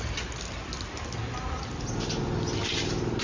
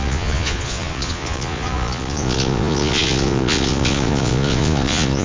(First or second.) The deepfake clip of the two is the second